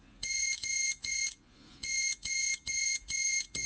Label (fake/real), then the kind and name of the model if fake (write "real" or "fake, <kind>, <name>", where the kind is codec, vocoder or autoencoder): fake, vocoder, Vocos